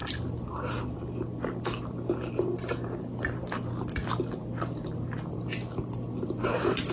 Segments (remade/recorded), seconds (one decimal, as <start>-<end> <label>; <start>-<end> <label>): 0.0-6.9 recorded